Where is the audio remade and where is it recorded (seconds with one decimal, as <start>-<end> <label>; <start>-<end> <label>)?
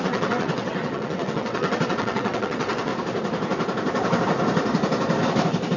0.0-2.9 remade; 2.9-5.8 recorded